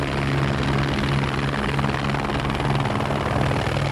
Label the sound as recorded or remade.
recorded